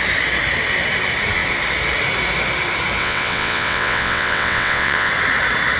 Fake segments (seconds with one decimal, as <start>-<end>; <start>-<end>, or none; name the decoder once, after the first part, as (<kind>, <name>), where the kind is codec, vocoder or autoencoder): 3.0-5.1 (vocoder, WaveNeXt)